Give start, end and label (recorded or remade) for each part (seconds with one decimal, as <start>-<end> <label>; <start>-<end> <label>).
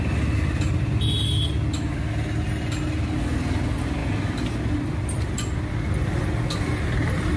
0.0-7.4 recorded